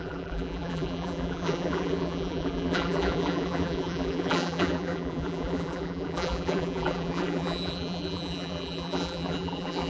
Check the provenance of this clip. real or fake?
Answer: fake